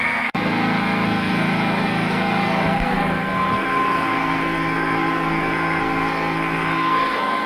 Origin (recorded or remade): remade